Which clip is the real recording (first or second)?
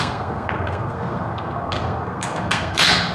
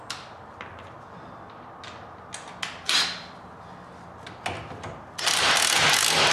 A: second